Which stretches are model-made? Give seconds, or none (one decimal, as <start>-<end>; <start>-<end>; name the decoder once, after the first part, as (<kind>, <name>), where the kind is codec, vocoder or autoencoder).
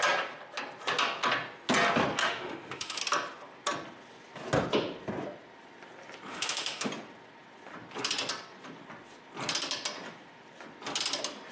2.2-3.0 (autoencoder, DAC-VAE); 6.3-6.9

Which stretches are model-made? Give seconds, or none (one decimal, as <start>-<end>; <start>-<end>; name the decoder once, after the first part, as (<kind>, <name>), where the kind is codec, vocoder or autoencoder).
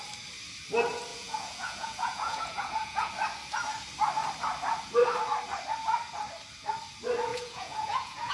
1.1-3.1 (vocoder, Vocos); 7.3-8.3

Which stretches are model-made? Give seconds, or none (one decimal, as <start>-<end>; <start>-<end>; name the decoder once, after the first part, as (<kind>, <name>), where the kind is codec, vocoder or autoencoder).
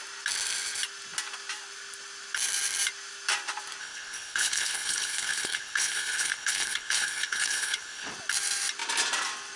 3.8-8.1 (codec, HILCodec)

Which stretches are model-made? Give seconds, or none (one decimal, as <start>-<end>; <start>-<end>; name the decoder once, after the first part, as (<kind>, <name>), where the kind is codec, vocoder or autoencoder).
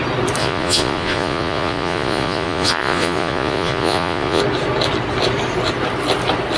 0.4-4.4 (vocoder, Vocos)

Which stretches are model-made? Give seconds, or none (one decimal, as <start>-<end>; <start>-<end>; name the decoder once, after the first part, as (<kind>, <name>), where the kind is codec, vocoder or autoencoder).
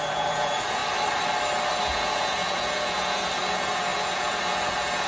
0.0-0.8 (vocoder, Vocos); 1.8-5.1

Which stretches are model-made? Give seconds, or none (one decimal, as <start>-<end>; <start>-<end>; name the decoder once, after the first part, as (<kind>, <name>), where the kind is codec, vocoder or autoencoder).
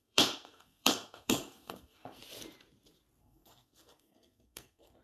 0.0-2.2 (codec, SNAC); 3.2-5.0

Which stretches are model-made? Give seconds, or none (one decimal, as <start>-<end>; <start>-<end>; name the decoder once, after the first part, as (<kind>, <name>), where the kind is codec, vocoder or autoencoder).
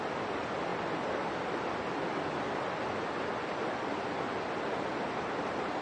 none